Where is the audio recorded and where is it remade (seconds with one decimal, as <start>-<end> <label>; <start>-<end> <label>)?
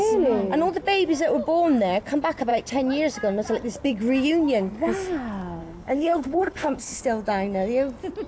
0.0-5.6 recorded; 5.6-7.0 remade; 7.0-8.3 recorded